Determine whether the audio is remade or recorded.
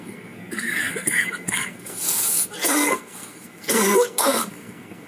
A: remade